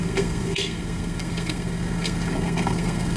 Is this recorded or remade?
remade